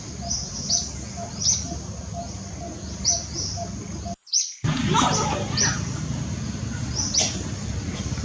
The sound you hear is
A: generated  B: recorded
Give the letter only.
B